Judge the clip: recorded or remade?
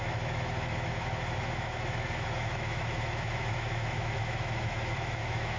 remade